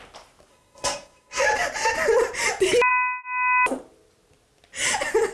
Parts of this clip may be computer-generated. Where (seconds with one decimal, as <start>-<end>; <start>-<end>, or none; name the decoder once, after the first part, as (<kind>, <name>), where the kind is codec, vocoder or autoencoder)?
0.5-1.4 (codec, SNAC)